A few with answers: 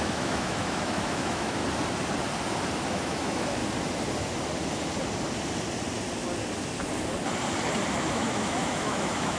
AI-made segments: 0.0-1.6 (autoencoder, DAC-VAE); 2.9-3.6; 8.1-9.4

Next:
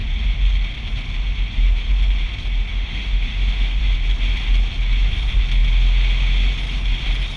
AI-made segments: 2.7-3.8 (autoencoder, DAC-VAE)

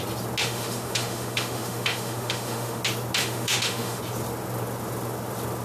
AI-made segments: 0.4-2.8 (autoencoder, DAC-VAE); 3.2-4.0